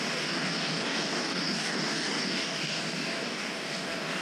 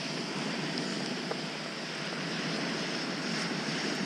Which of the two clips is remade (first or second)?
first